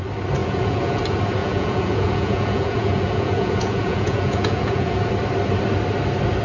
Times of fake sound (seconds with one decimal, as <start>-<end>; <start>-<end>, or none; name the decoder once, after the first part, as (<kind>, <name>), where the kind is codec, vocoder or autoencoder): 0.4-1.0 (vocoder, Vocos); 1.4-5.1